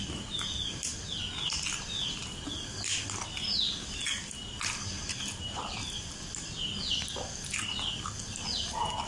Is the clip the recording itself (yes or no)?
yes